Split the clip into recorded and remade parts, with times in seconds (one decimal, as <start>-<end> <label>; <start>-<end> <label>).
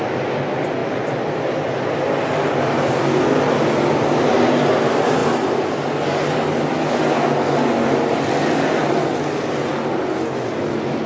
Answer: 0.0-11.1 recorded